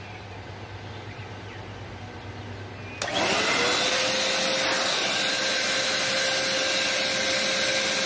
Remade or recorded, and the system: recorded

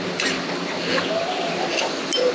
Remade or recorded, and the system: recorded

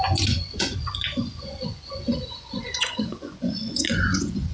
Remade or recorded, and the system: remade, vocoder, Vocos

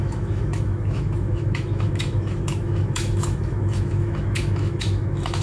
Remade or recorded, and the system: remade, autoencoder, DAC-VAE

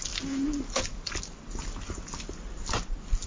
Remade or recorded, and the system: recorded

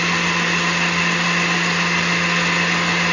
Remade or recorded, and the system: recorded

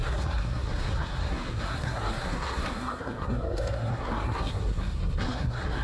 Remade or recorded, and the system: remade, codec, SNAC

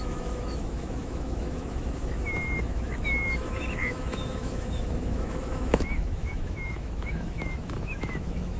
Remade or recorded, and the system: remade, autoencoder, DAC-VAE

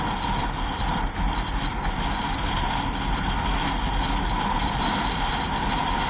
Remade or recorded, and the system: recorded